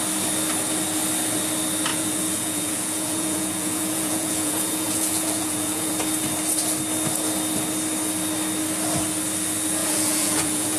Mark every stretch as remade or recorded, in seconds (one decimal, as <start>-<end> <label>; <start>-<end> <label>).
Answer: 0.0-1.9 recorded; 1.9-5.9 remade; 5.9-9.8 recorded; 9.8-10.8 remade